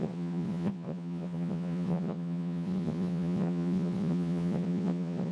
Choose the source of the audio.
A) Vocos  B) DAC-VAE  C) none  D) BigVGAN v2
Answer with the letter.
A